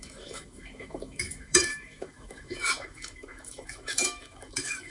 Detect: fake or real fake